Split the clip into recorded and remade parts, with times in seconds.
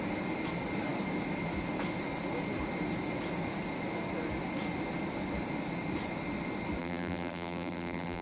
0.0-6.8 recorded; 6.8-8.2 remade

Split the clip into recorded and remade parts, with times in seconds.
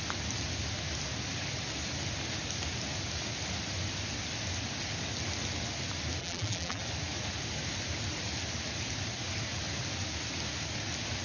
0.0-6.2 recorded; 6.2-6.8 remade; 6.8-11.2 recorded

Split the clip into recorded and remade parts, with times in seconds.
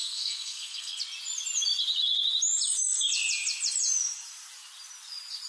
0.0-1.0 remade; 1.0-5.5 recorded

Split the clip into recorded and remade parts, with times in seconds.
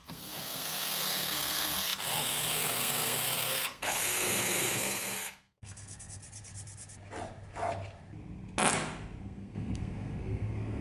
0.0-6.2 remade; 6.2-9.2 recorded; 9.2-10.8 remade